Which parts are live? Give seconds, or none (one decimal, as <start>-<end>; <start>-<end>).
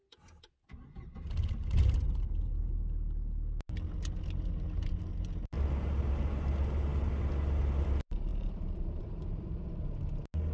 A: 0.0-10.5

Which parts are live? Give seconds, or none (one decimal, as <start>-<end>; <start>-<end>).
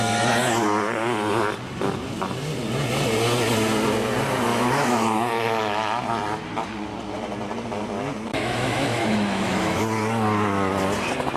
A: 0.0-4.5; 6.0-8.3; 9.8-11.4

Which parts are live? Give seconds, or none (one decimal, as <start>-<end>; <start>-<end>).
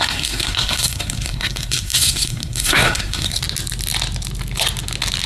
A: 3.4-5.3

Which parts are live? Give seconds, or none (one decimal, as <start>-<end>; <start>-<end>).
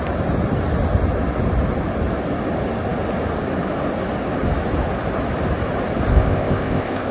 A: 0.0-6.1